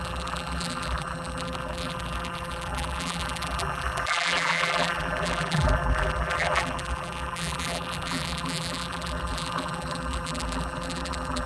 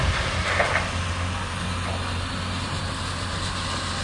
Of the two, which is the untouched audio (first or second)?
second